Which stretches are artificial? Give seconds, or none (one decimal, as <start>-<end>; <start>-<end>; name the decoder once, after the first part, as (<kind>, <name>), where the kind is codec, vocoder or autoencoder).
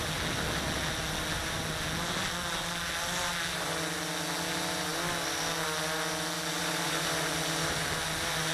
6.6-7.3 (vocoder, BigVGAN v2)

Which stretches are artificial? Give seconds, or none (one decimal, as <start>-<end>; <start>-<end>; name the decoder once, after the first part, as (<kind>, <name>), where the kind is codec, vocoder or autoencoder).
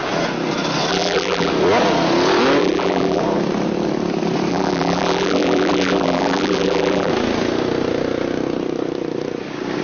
0.9-1.5 (vocoder, BigVGAN v2); 2.6-3.2; 4.5-7.1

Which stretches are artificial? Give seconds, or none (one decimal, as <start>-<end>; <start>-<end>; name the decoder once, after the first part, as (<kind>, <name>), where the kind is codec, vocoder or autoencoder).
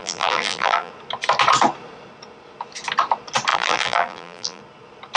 0.0-0.9 (vocoder, BigVGAN v2); 3.5-4.6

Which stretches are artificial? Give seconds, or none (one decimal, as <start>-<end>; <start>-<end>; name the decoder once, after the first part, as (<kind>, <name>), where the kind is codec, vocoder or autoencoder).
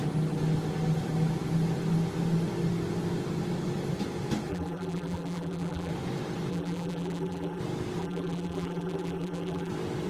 4.5-5.9 (vocoder, BigVGAN v2); 6.5-7.6; 8.0-9.7